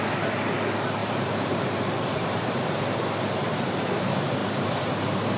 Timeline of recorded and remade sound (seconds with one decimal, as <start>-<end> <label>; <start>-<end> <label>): 0.0-1.0 recorded; 1.0-2.8 remade; 2.8-3.4 recorded; 3.4-3.9 remade; 3.9-4.4 recorded; 4.4-5.4 remade